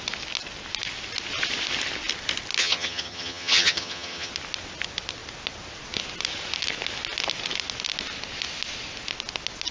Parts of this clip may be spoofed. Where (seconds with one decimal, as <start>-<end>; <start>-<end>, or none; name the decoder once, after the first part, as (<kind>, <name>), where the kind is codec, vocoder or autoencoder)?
2.6-4.3 (vocoder, HiFi-GAN)